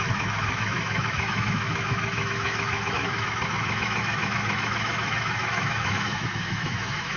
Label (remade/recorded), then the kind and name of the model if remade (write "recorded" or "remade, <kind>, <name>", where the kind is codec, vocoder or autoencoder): remade, autoencoder, DAC-VAE